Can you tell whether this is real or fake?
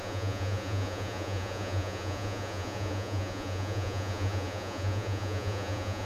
fake